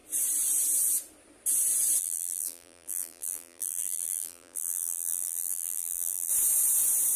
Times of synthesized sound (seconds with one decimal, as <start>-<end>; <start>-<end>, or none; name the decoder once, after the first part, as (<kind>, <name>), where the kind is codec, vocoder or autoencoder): 2.0-6.3 (vocoder, BigVGAN v2)

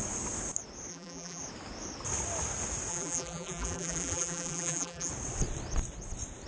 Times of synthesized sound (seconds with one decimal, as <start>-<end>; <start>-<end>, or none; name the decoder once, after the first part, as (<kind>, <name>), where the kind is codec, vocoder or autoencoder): 0.9-1.4 (vocoder, BigVGAN v2); 2.9-5.1

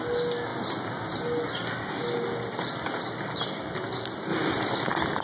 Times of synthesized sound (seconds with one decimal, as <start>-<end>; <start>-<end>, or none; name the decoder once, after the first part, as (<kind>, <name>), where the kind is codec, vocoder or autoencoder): none

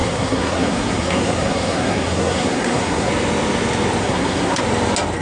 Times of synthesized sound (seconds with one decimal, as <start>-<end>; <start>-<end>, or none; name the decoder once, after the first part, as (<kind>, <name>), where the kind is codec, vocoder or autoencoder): 0.0-3.1 (codec, SNAC); 4.0-4.6

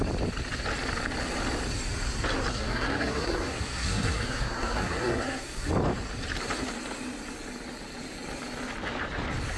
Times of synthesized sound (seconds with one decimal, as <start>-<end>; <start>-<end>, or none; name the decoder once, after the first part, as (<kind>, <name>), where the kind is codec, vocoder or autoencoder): 2.5-5.7 (codec, SNAC)

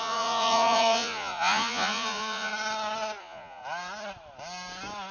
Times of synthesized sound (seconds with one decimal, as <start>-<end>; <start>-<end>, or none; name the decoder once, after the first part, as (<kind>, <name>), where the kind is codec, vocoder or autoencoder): 0.0-2.5 (vocoder, Vocos); 3.2-3.6

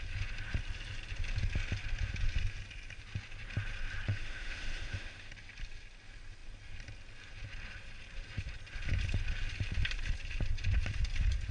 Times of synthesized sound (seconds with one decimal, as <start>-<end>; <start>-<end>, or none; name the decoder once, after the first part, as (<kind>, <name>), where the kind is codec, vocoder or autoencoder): 4.1-5.3 (autoencoder, DAC-VAE)

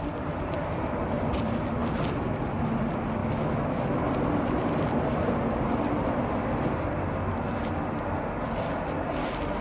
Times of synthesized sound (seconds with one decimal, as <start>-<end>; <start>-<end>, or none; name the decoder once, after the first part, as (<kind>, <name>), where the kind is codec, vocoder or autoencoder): 3.2-4.0 (autoencoder, DAC-VAE)